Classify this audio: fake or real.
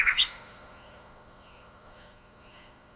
fake